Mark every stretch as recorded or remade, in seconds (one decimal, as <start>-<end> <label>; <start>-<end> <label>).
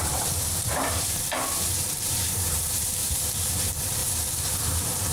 0.0-4.0 remade; 4.0-4.6 recorded; 4.6-5.1 remade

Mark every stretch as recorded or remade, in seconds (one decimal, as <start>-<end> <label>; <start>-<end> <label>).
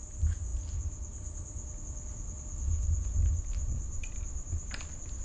0.0-5.2 recorded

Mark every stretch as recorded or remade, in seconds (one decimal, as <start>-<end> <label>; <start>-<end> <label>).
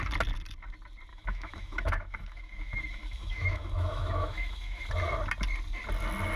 0.0-1.1 recorded; 1.1-4.9 remade; 4.9-6.4 recorded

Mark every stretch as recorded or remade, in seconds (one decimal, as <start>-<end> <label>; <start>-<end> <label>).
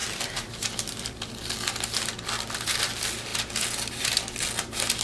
0.0-1.3 remade; 1.3-5.0 recorded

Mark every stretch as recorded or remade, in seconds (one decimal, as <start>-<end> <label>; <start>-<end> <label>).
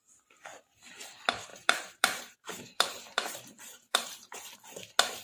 0.0-1.5 recorded; 1.5-4.5 remade; 4.5-5.2 recorded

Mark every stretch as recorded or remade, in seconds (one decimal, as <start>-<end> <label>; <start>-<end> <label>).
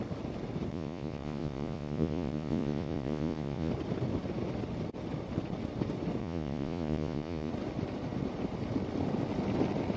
0.0-0.7 recorded; 0.7-3.7 remade; 3.7-6.2 recorded; 6.2-7.5 remade; 7.5-10.0 recorded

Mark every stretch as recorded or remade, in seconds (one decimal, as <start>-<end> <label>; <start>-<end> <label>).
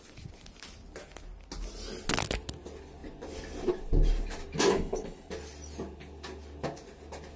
0.0-4.7 recorded; 4.7-5.3 remade; 5.3-7.4 recorded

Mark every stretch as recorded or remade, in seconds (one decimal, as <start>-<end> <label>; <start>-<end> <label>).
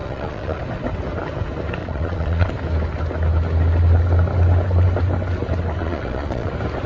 0.0-0.6 remade; 0.6-1.8 recorded; 1.8-2.5 remade; 2.5-5.8 recorded; 5.8-6.5 remade; 6.5-6.9 recorded